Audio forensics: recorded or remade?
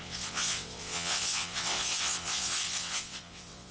remade